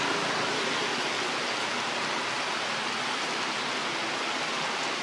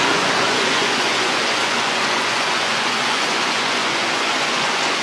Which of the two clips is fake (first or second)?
second